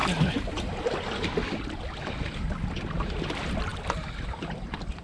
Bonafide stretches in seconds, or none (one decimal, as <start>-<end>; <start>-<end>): 0.0-5.0